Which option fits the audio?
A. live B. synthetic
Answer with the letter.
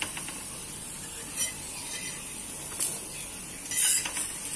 A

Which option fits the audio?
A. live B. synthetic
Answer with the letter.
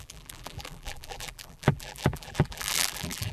B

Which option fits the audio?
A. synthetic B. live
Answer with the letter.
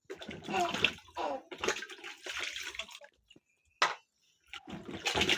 B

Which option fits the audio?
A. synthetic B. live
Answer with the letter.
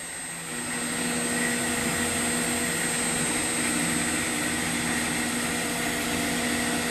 B